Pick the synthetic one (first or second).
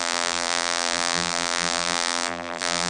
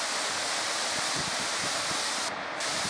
first